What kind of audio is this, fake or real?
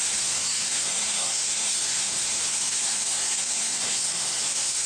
fake